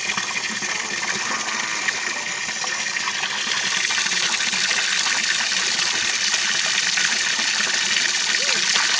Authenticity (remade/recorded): recorded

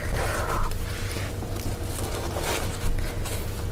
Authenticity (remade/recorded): recorded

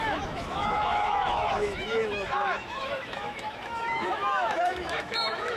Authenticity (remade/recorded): remade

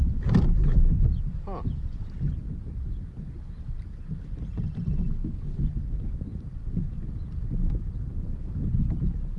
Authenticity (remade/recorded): recorded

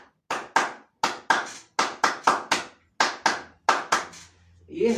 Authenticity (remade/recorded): recorded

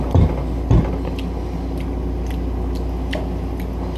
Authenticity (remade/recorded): recorded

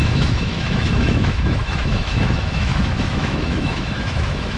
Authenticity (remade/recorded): remade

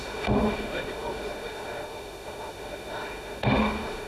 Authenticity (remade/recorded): remade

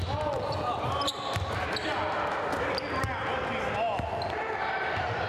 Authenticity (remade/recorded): recorded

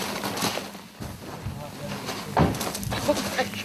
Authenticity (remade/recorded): recorded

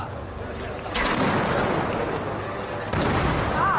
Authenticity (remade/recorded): recorded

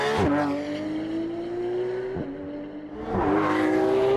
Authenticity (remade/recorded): recorded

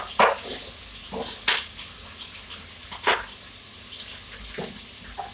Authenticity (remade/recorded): recorded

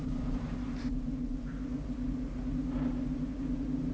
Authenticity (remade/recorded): recorded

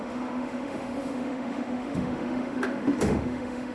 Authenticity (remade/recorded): remade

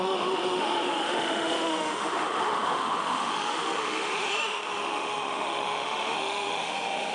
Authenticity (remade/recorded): remade